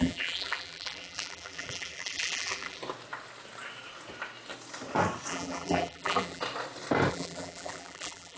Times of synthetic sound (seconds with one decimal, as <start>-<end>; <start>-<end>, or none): 0.0-2.8; 5.3-6.4; 7.1-8.4